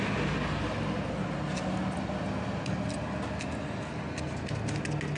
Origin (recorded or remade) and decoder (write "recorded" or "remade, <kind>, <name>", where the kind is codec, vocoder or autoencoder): recorded